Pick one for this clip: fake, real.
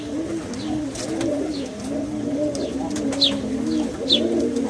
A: real